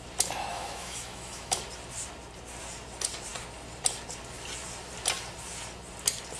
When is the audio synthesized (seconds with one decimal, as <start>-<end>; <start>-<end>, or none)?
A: 0.5-1.6